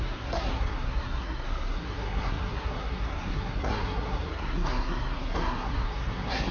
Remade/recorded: remade